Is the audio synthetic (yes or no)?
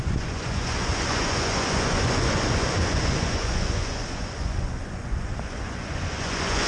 yes